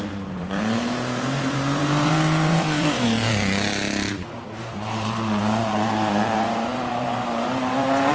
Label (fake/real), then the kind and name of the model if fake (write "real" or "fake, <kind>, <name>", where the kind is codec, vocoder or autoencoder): fake, vocoder, BigVGAN v2